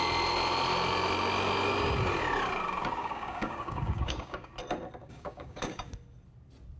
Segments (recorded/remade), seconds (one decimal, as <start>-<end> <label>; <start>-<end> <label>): 0.0-3.0 recorded; 3.0-4.5 remade; 4.5-5.0 recorded; 5.0-5.9 remade; 5.9-6.8 recorded